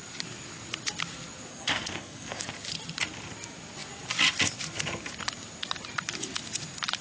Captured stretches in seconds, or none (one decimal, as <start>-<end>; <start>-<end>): 0.0-1.5; 2.5-7.0